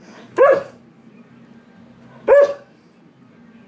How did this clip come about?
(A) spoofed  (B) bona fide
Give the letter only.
B